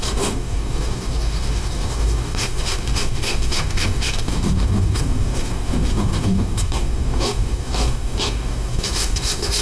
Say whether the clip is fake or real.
fake